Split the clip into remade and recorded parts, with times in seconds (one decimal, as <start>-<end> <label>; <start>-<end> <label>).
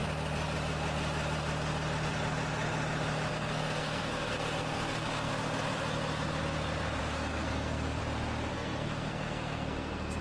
0.0-3.3 recorded; 3.3-5.3 remade; 5.3-7.0 recorded; 7.0-8.0 remade; 8.0-8.5 recorded; 8.5-10.2 remade